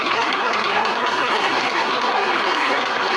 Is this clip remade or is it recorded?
remade